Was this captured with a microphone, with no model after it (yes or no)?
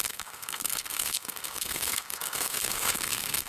no